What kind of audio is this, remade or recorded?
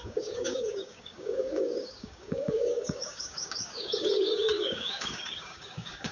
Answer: remade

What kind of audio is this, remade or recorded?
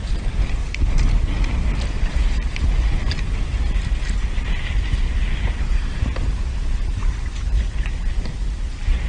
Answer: recorded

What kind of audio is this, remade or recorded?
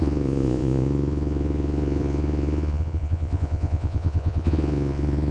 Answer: remade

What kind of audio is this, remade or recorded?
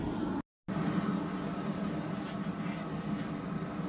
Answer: recorded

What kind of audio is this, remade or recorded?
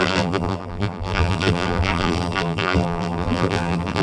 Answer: remade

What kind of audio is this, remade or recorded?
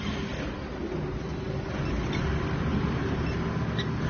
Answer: recorded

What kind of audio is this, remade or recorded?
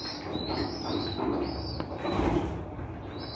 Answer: recorded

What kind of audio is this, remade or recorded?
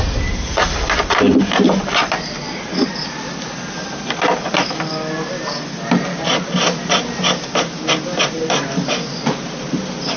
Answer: recorded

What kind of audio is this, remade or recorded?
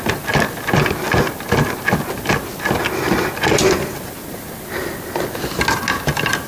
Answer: recorded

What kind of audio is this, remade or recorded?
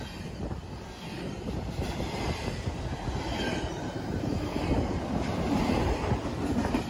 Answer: recorded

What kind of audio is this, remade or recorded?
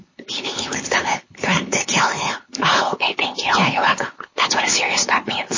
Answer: remade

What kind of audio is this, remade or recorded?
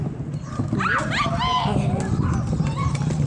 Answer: recorded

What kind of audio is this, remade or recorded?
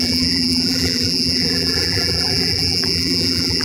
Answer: remade